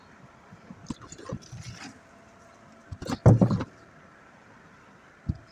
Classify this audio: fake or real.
real